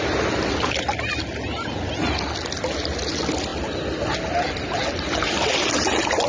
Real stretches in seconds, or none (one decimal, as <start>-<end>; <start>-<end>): 0.0-6.3